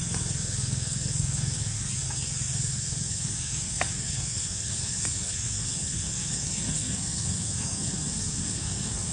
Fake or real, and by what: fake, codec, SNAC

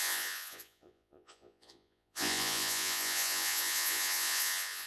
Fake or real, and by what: fake, vocoder, Vocos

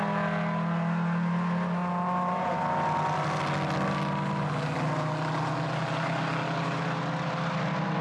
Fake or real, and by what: real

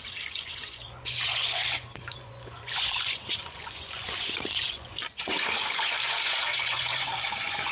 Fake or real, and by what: fake, vocoder, Vocos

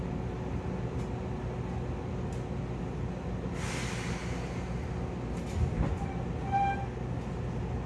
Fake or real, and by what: real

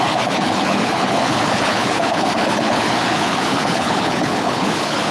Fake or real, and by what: fake, codec, HILCodec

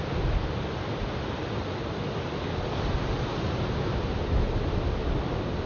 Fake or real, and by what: real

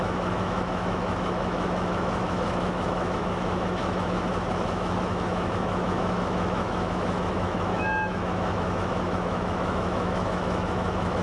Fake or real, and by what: fake, autoencoder, DAC-VAE